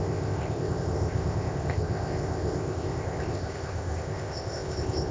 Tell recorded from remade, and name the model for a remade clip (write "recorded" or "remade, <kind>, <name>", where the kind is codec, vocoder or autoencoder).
remade, codec, ZipCodec